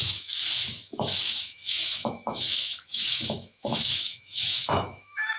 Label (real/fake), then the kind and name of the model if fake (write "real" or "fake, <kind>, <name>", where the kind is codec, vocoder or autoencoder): fake, autoencoder, DAC-VAE